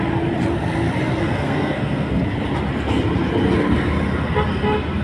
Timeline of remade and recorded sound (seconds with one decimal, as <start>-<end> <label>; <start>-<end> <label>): 0.0-1.2 recorded; 1.2-2.2 remade; 2.2-5.0 recorded